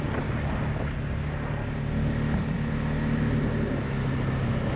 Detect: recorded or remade recorded